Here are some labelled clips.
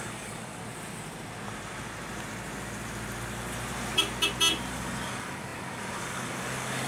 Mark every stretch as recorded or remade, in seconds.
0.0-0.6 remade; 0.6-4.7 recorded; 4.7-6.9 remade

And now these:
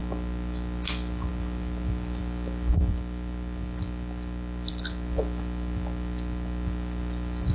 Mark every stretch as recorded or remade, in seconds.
0.0-7.5 recorded

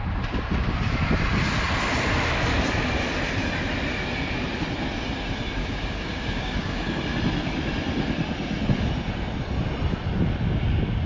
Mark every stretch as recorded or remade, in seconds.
0.0-5.6 recorded; 5.6-7.0 remade; 7.0-11.1 recorded

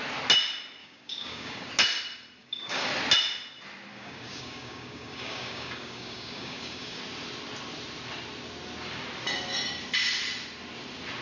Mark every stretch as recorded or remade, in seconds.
0.0-0.8 recorded; 0.8-1.7 remade; 1.7-2.4 recorded; 2.4-2.9 remade; 2.9-3.9 recorded; 3.9-7.0 remade; 7.0-11.2 recorded